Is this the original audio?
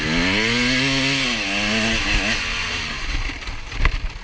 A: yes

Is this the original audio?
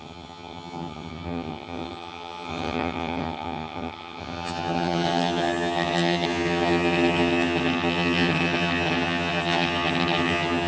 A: no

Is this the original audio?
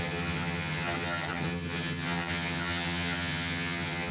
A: no